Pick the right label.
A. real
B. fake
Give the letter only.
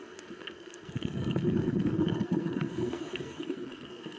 B